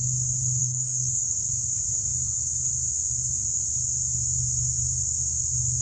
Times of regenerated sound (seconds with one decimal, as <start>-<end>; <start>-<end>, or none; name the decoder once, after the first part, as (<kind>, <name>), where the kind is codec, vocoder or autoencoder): 0.6-1.3 (codec, DAC)